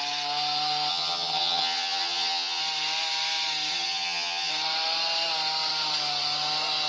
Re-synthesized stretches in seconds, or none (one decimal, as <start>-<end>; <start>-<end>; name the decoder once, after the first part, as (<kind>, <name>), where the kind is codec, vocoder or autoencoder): 0.9-2.6 (vocoder, HiFi-GAN); 3.7-4.5